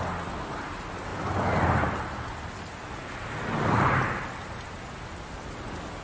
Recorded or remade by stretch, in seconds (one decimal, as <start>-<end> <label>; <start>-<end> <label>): 0.0-6.0 recorded